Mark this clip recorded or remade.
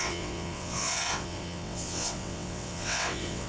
remade